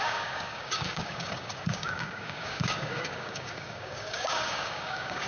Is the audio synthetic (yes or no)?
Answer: yes